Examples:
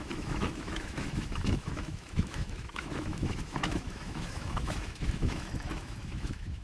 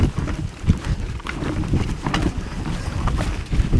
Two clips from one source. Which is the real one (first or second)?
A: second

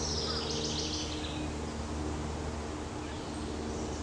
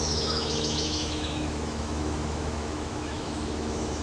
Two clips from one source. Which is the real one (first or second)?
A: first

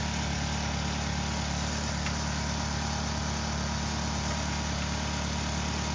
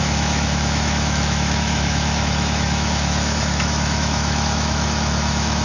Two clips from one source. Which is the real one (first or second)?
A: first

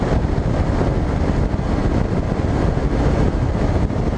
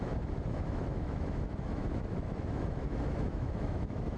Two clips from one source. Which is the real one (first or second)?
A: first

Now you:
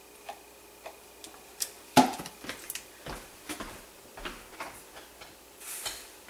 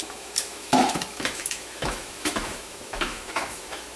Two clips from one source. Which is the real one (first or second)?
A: first